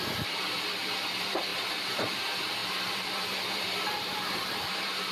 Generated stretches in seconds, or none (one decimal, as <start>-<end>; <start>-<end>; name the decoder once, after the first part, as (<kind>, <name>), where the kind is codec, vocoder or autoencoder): 0.0-5.1 (vocoder, BigVGAN v2)